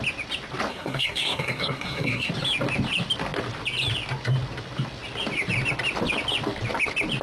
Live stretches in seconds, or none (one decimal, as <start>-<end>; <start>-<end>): 0.0-0.7; 2.3-7.2